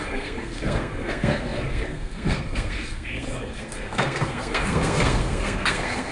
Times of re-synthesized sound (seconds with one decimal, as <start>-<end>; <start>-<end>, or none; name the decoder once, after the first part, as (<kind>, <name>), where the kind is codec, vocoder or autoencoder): 0.0-6.1 (codec, SNAC)